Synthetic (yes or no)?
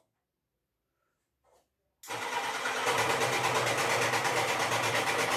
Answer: no